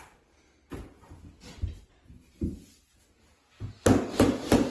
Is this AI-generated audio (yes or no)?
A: no